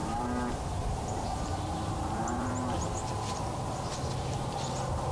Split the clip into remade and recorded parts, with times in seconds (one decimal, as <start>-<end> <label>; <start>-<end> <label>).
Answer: 0.0-0.5 remade; 0.5-0.9 recorded; 0.9-2.5 remade; 2.5-5.1 recorded